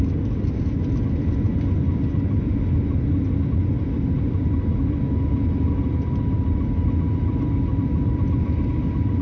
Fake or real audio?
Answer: real